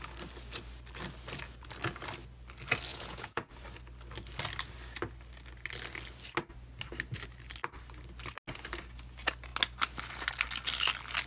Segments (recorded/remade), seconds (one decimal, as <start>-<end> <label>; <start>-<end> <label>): 0.0-2.9 recorded; 2.9-3.5 remade; 3.5-11.3 recorded

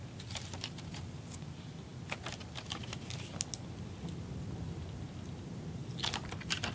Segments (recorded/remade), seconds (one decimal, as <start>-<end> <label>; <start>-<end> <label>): 0.0-6.7 recorded

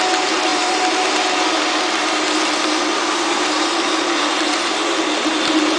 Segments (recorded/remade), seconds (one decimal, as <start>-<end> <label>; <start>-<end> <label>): 0.0-0.5 recorded; 0.5-1.1 remade; 1.1-4.3 recorded; 4.3-5.3 remade; 5.3-5.8 recorded

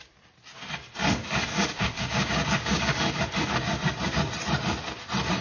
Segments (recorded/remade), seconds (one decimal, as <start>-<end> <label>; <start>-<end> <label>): 0.0-1.0 recorded; 1.0-4.2 remade; 4.2-5.4 recorded